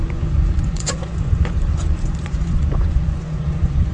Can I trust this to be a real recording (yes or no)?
no